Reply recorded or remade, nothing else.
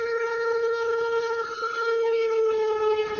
remade